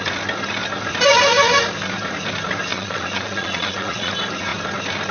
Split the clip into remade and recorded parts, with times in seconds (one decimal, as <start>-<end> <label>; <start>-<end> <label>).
0.0-2.7 recorded; 2.7-4.1 remade; 4.1-5.1 recorded

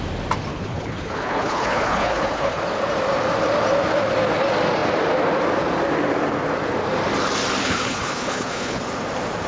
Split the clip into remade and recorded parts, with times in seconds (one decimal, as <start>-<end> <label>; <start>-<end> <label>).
0.0-0.5 recorded; 0.5-2.6 remade; 2.6-7.6 recorded; 7.6-8.8 remade; 8.8-9.5 recorded